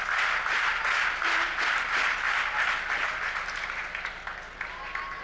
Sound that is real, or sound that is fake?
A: real